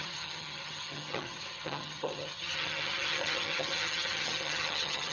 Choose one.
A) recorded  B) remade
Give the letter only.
B